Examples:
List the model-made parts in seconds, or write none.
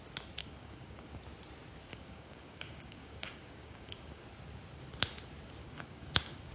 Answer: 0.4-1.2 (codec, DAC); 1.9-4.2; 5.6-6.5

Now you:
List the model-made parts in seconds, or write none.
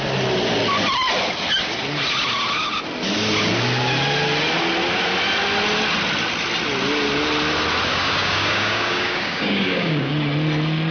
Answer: 7.9-10.1 (codec, DAC)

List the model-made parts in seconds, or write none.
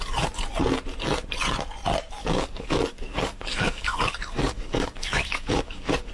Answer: 2.2-6.1 (codec, DAC)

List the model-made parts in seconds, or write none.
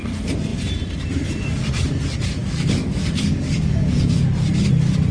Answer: 2.4-4.2 (codec, DAC)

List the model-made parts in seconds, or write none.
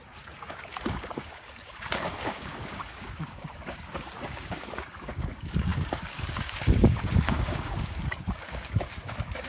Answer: 0.0-9.5 (codec, DAC)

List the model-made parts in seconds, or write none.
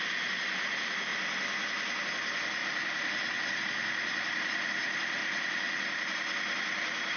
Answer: none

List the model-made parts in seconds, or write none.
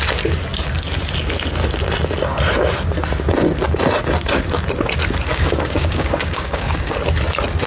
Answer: 5.3-6.9 (codec, DAC)